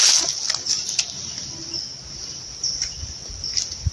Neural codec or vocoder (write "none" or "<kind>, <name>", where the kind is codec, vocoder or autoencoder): none